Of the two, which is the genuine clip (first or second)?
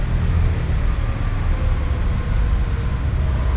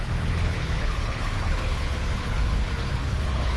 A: first